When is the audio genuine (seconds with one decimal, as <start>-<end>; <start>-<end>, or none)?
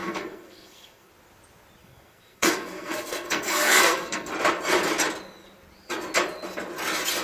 1.1-1.8; 4.3-7.2